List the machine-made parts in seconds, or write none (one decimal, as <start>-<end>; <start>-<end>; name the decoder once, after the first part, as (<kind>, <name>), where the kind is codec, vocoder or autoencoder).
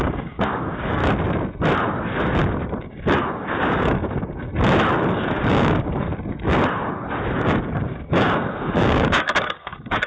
0.0-1.0 (codec, DAC); 2.8-4.5; 5.0-6.1; 7.3-10.1